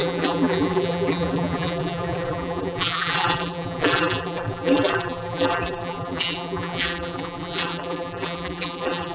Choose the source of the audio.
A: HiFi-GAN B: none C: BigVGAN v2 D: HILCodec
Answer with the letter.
C